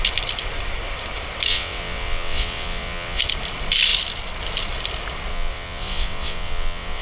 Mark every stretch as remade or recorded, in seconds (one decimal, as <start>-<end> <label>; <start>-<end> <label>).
0.0-1.5 recorded; 1.5-3.2 remade; 3.2-5.3 recorded; 5.3-7.0 remade